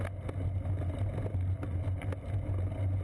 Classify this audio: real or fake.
real